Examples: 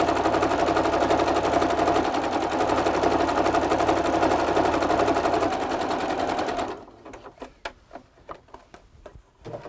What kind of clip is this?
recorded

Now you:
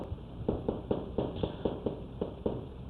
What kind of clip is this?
remade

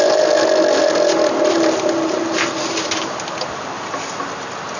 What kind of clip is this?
recorded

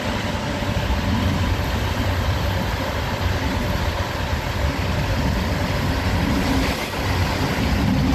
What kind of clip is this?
recorded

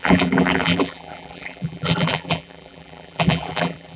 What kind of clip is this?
remade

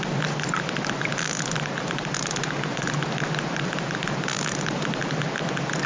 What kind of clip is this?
recorded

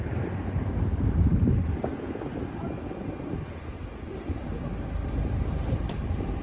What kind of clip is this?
recorded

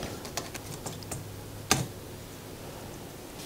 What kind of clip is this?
recorded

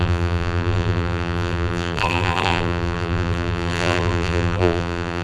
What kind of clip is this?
remade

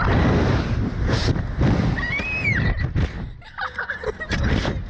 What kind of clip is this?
recorded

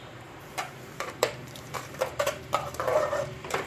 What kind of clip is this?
remade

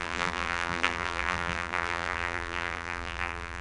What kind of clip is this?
remade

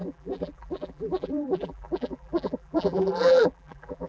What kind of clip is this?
remade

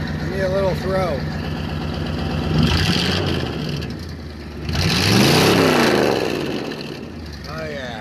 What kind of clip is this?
recorded